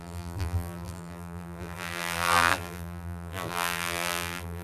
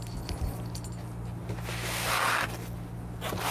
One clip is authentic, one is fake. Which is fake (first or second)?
first